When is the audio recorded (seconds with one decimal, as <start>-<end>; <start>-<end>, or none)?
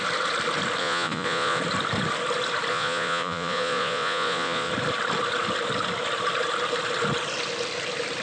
0.0-0.8; 1.6-2.7; 4.7-8.2